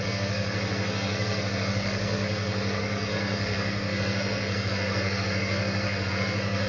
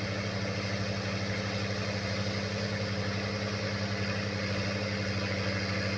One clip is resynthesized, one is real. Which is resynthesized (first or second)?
first